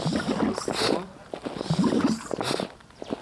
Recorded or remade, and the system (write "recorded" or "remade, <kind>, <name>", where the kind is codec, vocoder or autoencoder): recorded